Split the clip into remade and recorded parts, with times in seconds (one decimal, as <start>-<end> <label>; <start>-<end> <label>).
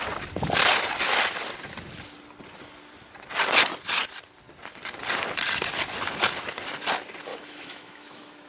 0.0-7.3 recorded; 7.3-8.5 remade